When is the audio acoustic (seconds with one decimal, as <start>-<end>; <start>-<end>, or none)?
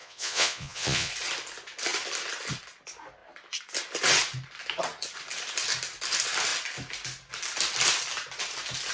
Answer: 1.1-8.9